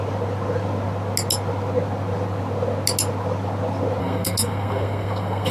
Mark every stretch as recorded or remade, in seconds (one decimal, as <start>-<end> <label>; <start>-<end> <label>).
0.0-4.0 recorded; 4.0-5.5 remade